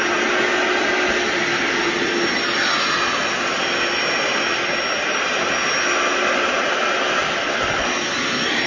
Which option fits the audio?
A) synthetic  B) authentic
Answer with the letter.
B